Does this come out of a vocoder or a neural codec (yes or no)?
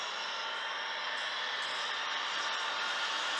no